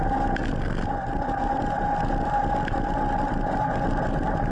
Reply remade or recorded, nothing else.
recorded